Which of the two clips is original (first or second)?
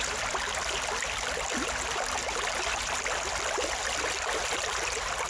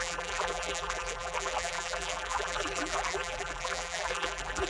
first